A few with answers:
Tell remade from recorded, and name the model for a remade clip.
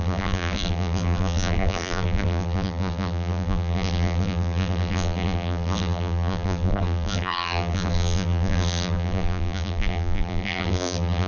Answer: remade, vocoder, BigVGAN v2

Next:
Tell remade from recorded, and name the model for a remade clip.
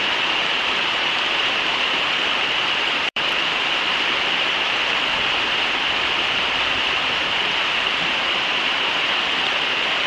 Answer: remade, vocoder, BigVGAN v2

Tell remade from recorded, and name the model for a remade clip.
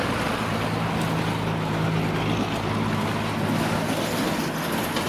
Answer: recorded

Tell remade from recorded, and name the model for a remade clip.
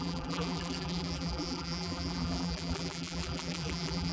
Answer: remade, vocoder, BigVGAN v2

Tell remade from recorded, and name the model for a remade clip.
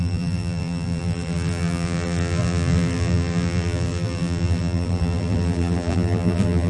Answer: remade, vocoder, BigVGAN v2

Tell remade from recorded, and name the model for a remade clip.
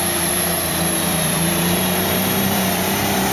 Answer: remade, vocoder, BigVGAN v2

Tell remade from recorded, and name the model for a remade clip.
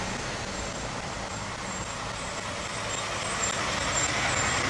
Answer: recorded